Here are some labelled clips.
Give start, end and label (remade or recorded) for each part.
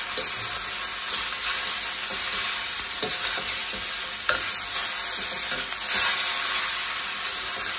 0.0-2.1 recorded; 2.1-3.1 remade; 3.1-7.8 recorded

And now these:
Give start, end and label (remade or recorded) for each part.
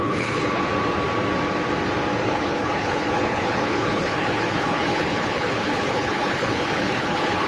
0.0-0.6 remade; 0.6-2.2 recorded; 2.2-7.5 remade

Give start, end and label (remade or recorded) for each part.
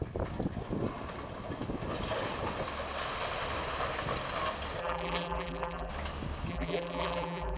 0.0-4.8 recorded; 4.8-5.9 remade; 5.9-6.5 recorded; 6.5-7.6 remade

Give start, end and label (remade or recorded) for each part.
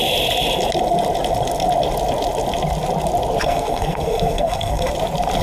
0.0-3.4 recorded; 3.4-4.9 remade; 4.9-5.4 recorded